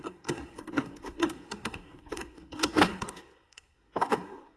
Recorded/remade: remade